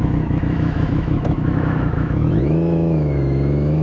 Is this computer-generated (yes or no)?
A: yes